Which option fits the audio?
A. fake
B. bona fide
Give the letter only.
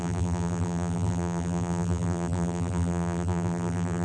A